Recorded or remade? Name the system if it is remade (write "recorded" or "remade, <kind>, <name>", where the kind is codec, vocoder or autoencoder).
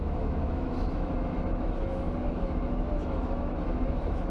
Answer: remade, autoencoder, DAC-VAE